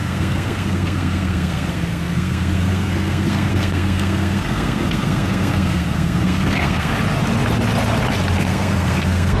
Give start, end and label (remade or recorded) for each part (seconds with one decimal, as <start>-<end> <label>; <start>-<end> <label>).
0.0-6.9 remade; 6.9-8.4 recorded; 8.4-9.4 remade